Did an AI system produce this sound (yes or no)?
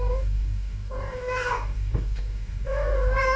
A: yes